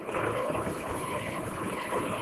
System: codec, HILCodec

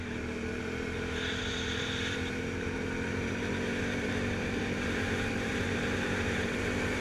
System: vocoder, BigVGAN v2